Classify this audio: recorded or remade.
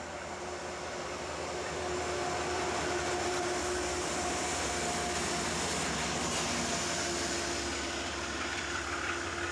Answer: recorded